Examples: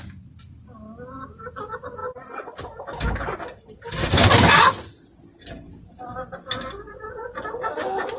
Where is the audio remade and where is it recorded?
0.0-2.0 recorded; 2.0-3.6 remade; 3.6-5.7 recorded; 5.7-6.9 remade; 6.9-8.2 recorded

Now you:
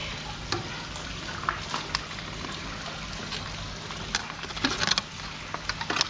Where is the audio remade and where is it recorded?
0.0-6.1 recorded